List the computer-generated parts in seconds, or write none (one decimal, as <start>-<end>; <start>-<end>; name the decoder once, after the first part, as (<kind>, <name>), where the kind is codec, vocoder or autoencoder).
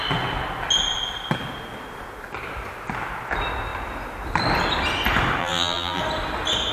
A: 5.4-6.0 (vocoder, BigVGAN v2)